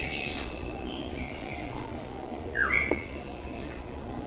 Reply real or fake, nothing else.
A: fake